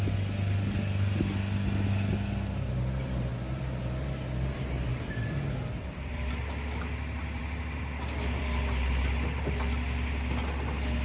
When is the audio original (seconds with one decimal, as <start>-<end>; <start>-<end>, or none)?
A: 0.0-4.9; 6.3-11.0

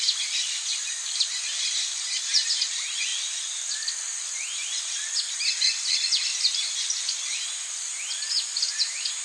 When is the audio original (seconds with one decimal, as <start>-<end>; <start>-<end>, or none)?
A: 0.0-0.7; 2.0-9.2

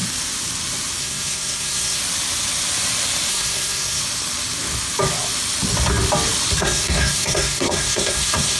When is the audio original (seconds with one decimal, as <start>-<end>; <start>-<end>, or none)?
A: 0.0-1.0; 2.0-3.3; 4.0-6.6

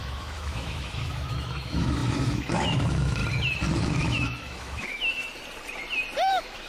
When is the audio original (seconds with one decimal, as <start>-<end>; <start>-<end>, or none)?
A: 3.2-3.7; 5.2-6.3

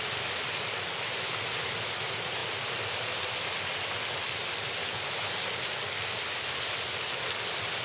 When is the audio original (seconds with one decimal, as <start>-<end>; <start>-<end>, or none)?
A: 0.0-7.8

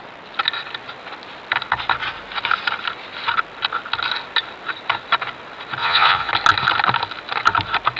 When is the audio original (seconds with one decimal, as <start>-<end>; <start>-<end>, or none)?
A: 0.0-5.8; 6.3-8.0